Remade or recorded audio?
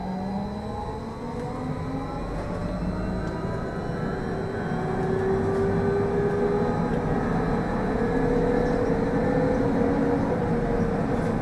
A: recorded